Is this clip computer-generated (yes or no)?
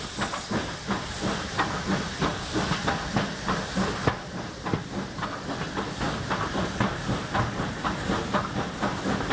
no